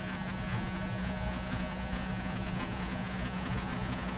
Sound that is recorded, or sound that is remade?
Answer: remade